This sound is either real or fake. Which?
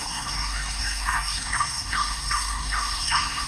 fake